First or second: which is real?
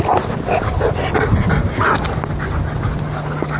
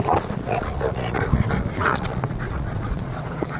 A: first